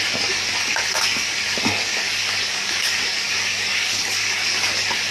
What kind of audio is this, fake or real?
fake